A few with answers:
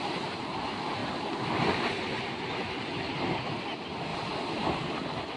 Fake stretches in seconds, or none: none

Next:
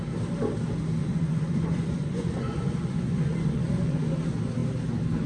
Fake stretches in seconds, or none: 1.0-4.1 (vocoder, Vocos)

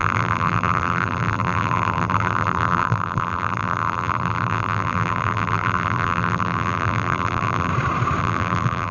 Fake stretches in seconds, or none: 0.0-7.7 (vocoder, BigVGAN v2); 8.2-8.9

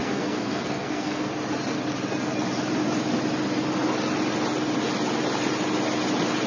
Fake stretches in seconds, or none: 0.0-1.3 (codec, SNAC)

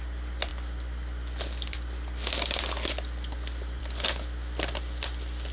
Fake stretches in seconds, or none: none

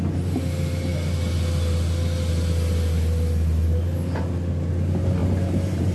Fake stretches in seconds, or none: 5.2-5.9 (vocoder, BigVGAN v2)

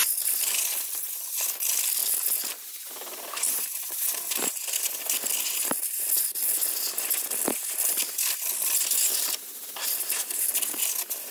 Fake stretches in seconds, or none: none

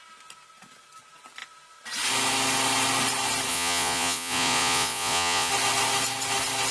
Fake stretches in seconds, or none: 3.5-5.5 (vocoder, Vocos)